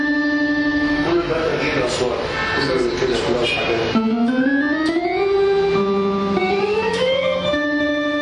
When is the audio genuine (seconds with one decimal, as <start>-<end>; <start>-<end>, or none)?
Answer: 1.5-6.4